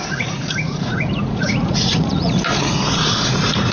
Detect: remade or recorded remade